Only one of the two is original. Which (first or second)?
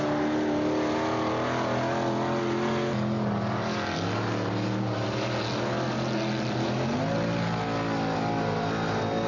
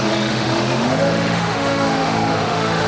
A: first